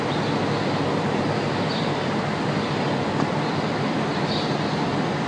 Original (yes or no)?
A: no